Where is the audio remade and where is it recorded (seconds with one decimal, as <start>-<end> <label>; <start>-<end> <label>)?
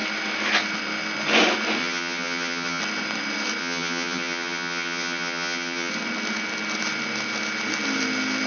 0.0-1.8 recorded; 1.8-2.8 remade; 2.8-3.6 recorded; 3.6-5.9 remade; 5.9-8.5 recorded